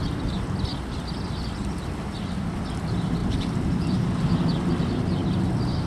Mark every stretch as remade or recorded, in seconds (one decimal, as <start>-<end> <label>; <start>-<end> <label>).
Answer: 0.0-0.7 recorded; 0.7-2.5 remade; 2.5-3.2 recorded; 3.2-4.1 remade; 4.1-5.9 recorded